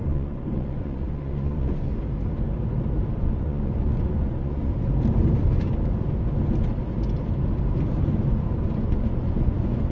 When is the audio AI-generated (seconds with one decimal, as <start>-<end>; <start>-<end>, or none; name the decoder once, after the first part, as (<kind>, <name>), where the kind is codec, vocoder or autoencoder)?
0.0-1.9 (vocoder, Vocos); 3.2-4.7; 8.8-9.9